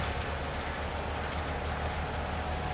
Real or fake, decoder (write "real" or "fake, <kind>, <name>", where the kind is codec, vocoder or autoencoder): real